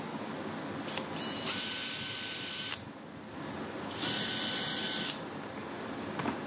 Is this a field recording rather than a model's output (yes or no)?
yes